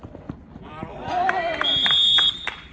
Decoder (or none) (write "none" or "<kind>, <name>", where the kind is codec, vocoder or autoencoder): vocoder, BigVGAN v2